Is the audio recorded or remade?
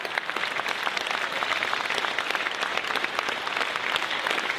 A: recorded